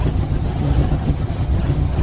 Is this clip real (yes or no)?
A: no